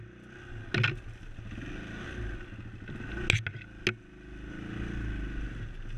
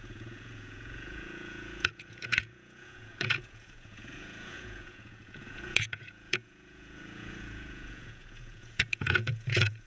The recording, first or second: first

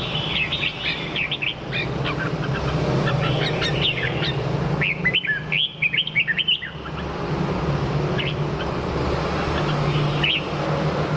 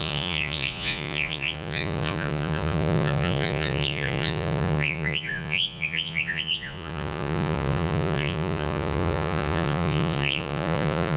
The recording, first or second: first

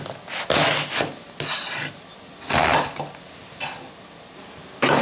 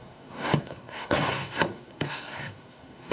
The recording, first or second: first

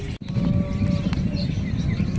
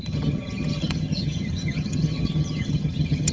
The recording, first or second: first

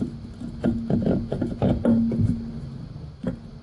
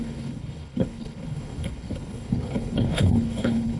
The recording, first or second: first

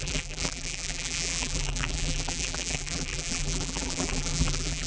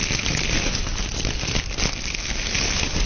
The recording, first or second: second